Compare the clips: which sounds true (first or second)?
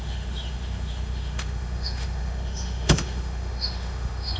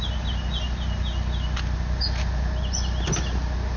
second